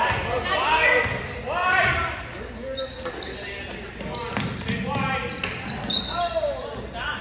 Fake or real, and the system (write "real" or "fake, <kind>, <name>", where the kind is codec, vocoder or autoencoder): real